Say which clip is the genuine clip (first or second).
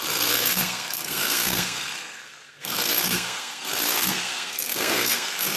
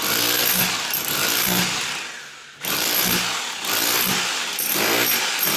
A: second